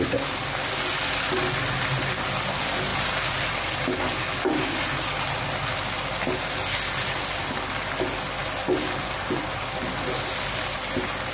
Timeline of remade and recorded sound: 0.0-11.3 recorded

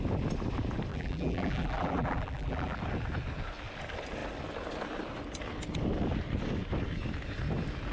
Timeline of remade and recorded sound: 0.0-0.9 recorded; 0.9-2.8 remade; 2.8-7.9 recorded

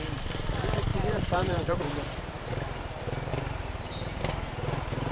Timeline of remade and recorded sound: 0.0-0.9 recorded; 0.9-1.8 remade; 1.8-3.3 recorded; 3.3-4.2 remade; 4.2-5.1 recorded